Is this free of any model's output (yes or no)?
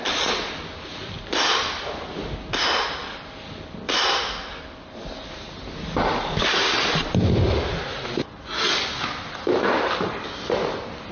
yes